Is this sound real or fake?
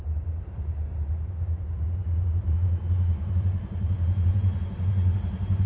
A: fake